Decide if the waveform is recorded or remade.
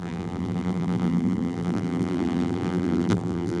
remade